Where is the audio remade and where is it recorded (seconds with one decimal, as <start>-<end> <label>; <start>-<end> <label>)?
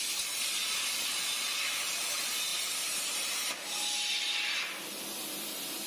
0.0-2.5 recorded; 2.5-3.5 remade; 3.5-5.9 recorded